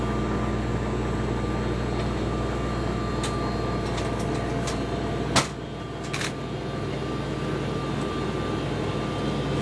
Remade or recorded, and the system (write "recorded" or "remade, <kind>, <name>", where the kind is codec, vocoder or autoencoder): recorded